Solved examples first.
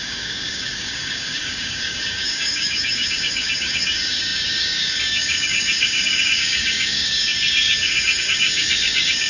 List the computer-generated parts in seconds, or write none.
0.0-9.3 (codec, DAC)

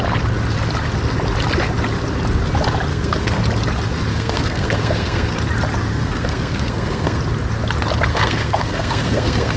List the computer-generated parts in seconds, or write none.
2.9-3.4 (codec, SNAC); 4.1-5.3; 5.9-7.2; 8.1-9.6

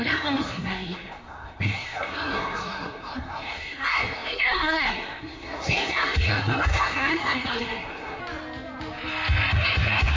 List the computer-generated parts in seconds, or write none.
0.0-8.2 (codec, SNAC); 9.5-10.2

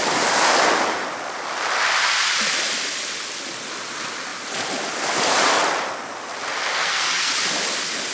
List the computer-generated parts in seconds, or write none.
6.7-7.3 (codec, SNAC)